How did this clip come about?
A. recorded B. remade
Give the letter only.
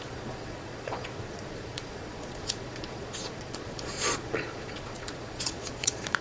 B